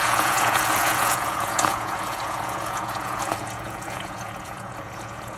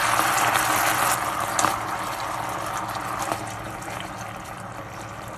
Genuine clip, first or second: second